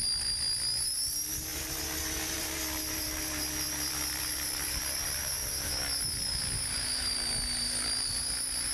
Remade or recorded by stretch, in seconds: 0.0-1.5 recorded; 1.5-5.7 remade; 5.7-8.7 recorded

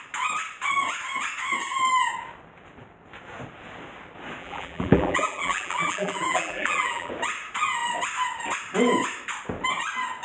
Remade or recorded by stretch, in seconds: 0.0-4.4 recorded; 4.4-7.1 remade; 7.1-10.2 recorded